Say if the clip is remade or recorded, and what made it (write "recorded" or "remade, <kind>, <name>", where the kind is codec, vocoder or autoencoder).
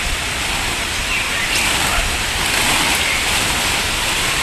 recorded